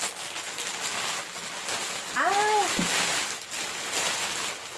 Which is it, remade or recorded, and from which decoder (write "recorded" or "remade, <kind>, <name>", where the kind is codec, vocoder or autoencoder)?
recorded